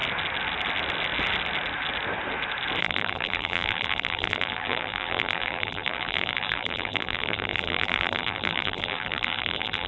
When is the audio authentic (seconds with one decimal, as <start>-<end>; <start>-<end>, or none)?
0.0-2.8